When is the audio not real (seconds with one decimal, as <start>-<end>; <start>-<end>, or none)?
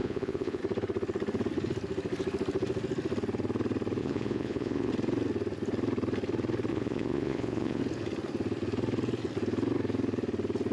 0.0-0.6; 4.0-4.9; 6.7-7.8